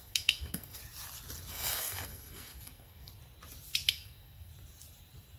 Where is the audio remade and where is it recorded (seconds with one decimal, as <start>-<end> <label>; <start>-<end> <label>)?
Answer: 0.0-0.8 remade; 0.8-1.5 recorded; 1.5-3.1 remade; 3.1-3.9 recorded; 3.9-4.5 remade; 4.5-5.4 recorded